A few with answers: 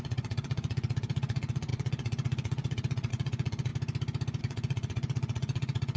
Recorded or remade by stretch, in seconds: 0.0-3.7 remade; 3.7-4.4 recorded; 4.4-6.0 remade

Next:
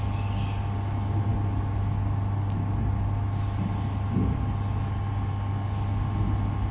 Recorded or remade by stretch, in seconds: 0.0-6.7 recorded

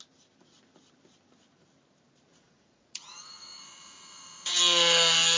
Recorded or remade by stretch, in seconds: 0.0-2.3 recorded; 2.3-4.6 remade; 4.6-5.4 recorded

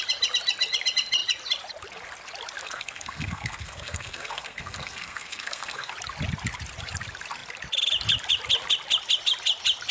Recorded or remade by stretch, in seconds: 0.0-2.6 recorded; 2.6-5.9 remade; 5.9-9.9 recorded

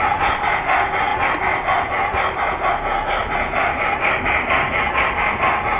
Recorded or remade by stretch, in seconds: 0.0-3.2 recorded; 3.2-4.5 remade; 4.5-5.8 recorded

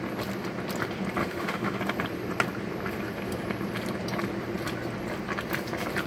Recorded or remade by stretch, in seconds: 0.0-1.2 recorded; 1.2-1.8 remade; 1.8-6.1 recorded

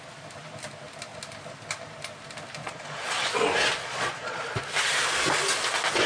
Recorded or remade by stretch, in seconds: 0.0-2.6 recorded; 2.6-3.3 remade; 3.3-3.8 recorded; 3.8-4.4 remade; 4.4-6.1 recorded